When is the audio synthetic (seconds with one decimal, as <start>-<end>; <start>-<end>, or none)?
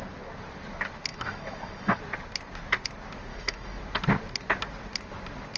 1.1-2.0; 3.3-3.8